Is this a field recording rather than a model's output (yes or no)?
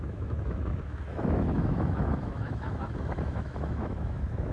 no